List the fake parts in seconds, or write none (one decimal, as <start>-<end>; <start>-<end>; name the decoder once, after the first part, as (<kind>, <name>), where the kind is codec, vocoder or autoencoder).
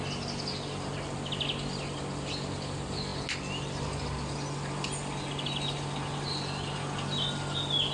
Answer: none